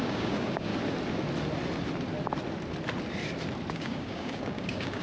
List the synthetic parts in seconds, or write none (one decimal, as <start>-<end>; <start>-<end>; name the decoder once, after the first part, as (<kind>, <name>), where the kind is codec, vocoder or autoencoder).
0.0-0.7 (codec, DAC); 3.7-5.0